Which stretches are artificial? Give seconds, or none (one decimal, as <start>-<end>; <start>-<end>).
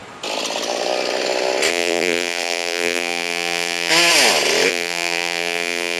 1.7-3.9; 4.7-6.0